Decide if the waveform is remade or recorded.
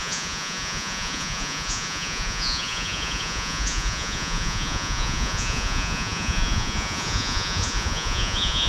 remade